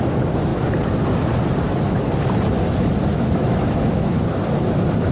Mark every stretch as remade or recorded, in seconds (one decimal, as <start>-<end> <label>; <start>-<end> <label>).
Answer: 0.0-3.1 recorded; 3.1-4.4 remade; 4.4-5.1 recorded